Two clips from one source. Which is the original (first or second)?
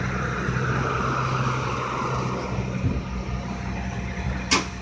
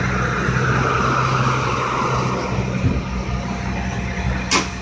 second